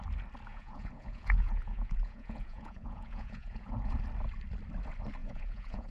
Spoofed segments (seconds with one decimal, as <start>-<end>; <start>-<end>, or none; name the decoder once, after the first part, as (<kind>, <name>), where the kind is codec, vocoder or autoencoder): 0.5-4.0 (vocoder, Vocos); 5.2-5.9